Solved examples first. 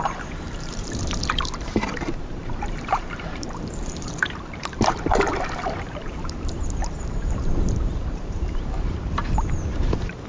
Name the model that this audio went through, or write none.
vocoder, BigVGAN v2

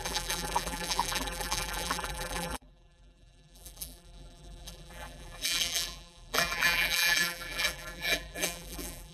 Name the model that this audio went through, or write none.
vocoder, BigVGAN v2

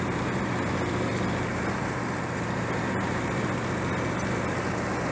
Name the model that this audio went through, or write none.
none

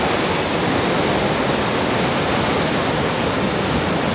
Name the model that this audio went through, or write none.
none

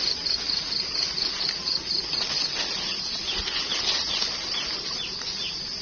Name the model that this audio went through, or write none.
none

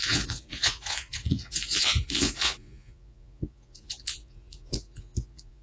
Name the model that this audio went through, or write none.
vocoder, Vocos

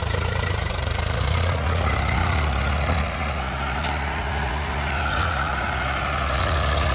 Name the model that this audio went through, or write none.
vocoder, Vocos